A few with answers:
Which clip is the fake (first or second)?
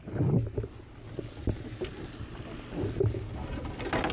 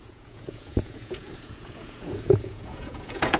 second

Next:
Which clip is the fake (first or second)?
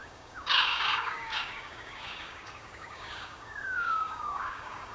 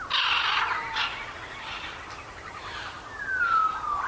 first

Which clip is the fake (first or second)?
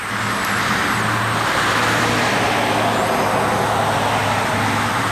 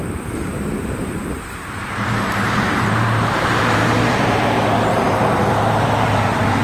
second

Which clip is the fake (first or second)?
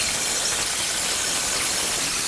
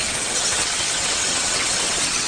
second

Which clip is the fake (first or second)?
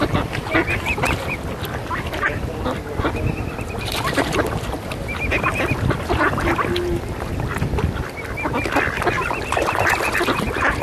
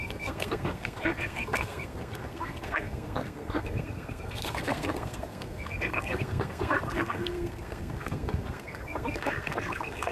second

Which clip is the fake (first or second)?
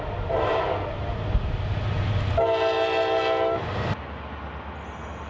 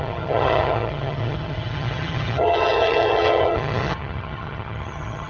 second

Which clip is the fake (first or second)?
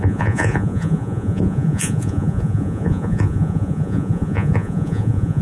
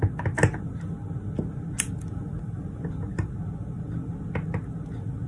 first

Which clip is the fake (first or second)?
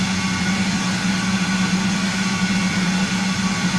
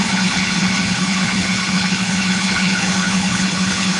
second